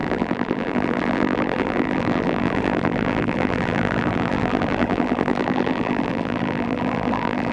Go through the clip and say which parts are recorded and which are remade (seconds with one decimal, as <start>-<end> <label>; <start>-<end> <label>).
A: 0.0-7.5 remade